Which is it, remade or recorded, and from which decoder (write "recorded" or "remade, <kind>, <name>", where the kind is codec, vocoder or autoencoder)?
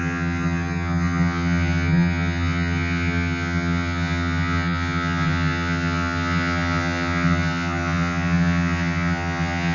remade, vocoder, HiFi-GAN